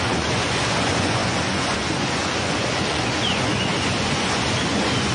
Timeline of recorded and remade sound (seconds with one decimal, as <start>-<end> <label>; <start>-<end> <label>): 0.0-5.1 remade